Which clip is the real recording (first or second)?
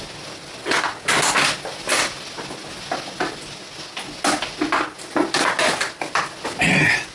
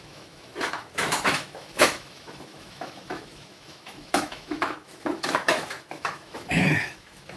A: first